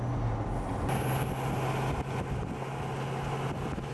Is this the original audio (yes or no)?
yes